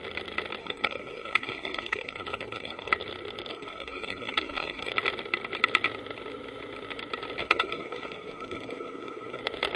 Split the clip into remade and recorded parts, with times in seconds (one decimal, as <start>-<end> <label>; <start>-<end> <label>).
0.0-0.6 recorded; 0.6-2.9 remade; 2.9-3.5 recorded; 3.5-4.9 remade; 4.9-7.4 recorded; 7.4-9.4 remade; 9.4-9.8 recorded

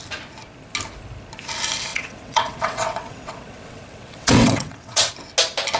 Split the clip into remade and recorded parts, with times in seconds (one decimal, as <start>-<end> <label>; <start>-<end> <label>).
0.0-1.9 recorded; 1.9-5.1 remade; 5.1-5.8 recorded

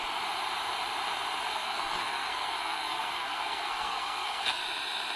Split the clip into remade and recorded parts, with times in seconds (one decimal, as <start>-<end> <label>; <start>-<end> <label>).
0.0-1.5 recorded; 1.5-4.6 remade; 4.6-5.2 recorded

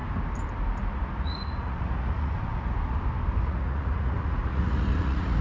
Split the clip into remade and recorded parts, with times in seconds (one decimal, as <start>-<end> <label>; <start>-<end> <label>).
0.0-1.2 recorded; 1.2-2.5 remade; 2.5-3.4 recorded; 3.4-5.4 remade

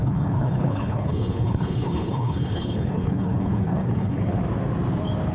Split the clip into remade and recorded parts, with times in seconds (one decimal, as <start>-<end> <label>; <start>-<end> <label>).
0.0-4.4 remade; 4.4-5.3 recorded

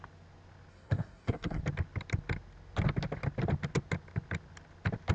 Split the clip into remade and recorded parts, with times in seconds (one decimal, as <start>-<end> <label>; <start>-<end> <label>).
0.0-0.7 recorded; 0.7-1.6 remade; 1.6-5.1 recorded

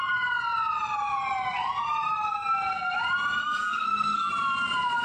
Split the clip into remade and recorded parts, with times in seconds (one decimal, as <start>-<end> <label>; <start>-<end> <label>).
0.0-3.4 recorded; 3.4-4.3 remade; 4.3-5.0 recorded